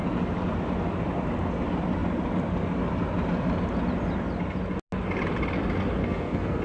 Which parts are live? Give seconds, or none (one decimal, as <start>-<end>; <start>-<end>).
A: 0.0-6.0